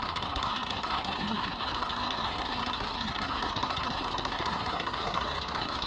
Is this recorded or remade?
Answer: remade